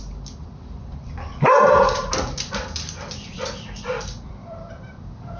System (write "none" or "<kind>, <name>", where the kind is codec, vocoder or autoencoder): vocoder, BigVGAN v2